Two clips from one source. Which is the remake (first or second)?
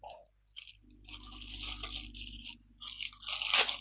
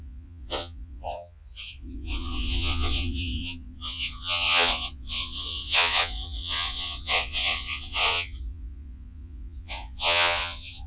second